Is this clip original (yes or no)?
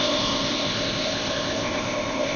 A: no